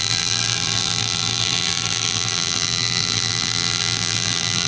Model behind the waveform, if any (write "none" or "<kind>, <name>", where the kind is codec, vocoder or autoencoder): vocoder, BigVGAN v2